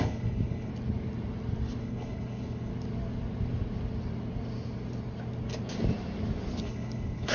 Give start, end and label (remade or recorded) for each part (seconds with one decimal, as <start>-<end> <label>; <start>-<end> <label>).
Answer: 0.0-0.7 remade; 0.7-1.8 recorded; 1.8-2.7 remade; 2.7-6.6 recorded; 6.6-7.3 remade